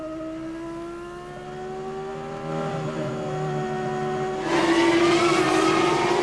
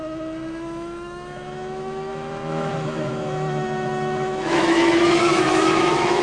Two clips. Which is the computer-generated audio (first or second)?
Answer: second